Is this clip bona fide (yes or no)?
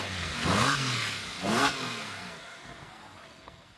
no